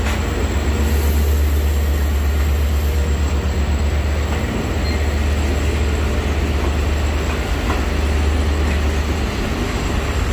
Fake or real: real